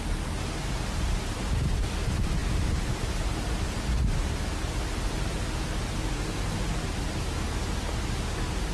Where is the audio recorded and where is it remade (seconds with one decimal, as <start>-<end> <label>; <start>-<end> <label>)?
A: 0.0-8.7 recorded